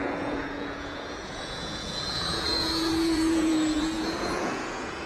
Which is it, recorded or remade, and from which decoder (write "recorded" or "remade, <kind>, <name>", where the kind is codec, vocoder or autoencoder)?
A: remade, vocoder, Vocos